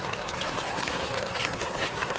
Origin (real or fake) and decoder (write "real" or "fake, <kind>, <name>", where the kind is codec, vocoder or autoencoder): fake, codec, SNAC